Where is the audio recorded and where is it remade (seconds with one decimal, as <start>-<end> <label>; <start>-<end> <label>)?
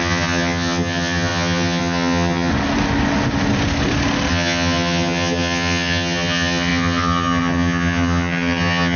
0.0-2.5 remade; 2.5-4.3 recorded; 4.3-9.0 remade